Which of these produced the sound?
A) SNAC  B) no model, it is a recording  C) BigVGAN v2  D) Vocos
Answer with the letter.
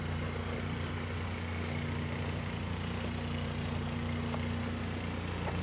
B